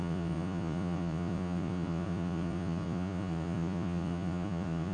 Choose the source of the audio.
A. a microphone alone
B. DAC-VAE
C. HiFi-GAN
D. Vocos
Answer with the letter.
D